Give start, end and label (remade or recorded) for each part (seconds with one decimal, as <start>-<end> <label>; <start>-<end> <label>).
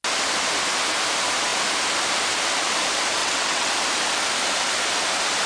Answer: 0.0-3.2 recorded; 3.2-3.7 remade; 3.7-5.5 recorded